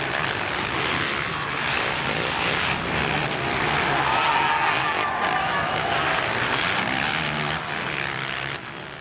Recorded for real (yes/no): yes